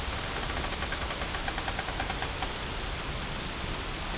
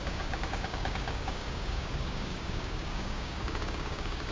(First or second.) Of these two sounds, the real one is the first